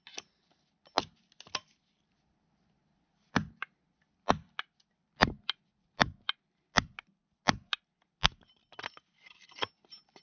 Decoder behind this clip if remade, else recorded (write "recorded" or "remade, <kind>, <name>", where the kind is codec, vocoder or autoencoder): remade, vocoder, BigVGAN v2